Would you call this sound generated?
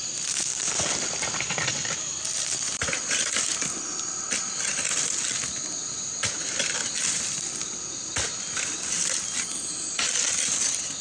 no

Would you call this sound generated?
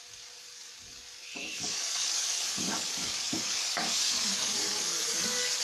yes